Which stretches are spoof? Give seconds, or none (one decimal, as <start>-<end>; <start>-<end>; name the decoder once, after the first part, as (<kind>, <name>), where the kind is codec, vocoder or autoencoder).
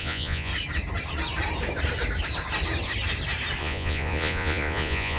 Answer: 0.0-0.5 (vocoder, Vocos); 3.6-5.2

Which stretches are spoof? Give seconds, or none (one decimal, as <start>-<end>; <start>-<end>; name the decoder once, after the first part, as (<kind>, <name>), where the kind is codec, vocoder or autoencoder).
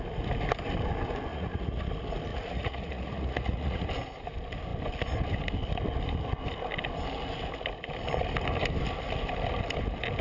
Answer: 1.3-1.9 (vocoder, Vocos); 2.3-3.9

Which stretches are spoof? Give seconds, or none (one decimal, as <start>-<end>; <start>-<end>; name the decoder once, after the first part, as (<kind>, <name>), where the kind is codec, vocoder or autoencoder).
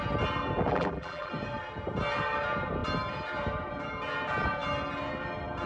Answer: 0.7-1.3 (vocoder, BigVGAN v2)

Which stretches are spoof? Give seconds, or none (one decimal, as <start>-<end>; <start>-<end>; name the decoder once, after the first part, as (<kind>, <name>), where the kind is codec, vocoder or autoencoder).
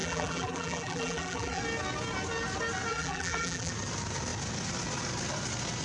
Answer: 0.0-1.6 (vocoder, BigVGAN v2); 2.9-3.7